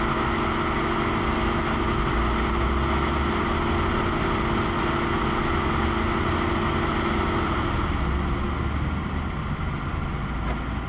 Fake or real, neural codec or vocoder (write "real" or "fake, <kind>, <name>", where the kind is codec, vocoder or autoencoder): real